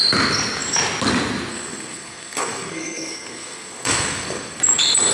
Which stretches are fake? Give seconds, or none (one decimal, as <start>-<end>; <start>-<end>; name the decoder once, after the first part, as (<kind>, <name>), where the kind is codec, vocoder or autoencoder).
1.5-4.6 (codec, SNAC)